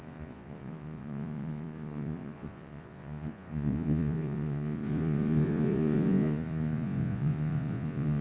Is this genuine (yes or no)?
no